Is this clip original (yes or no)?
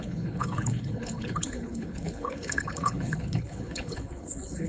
no